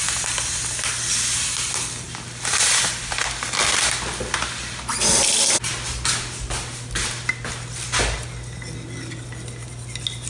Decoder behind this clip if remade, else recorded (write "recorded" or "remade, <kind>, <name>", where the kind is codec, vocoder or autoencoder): recorded